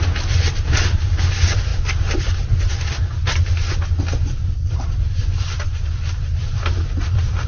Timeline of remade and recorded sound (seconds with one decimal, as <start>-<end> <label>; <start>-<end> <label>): 0.0-7.5 recorded